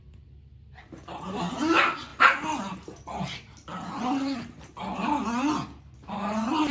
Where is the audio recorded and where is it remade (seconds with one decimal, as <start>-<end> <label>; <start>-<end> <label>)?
0.0-6.7 recorded